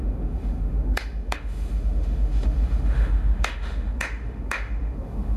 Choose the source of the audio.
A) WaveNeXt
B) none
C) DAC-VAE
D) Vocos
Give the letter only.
C